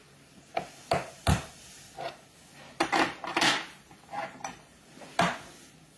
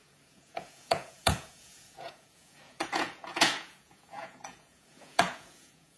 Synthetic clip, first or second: second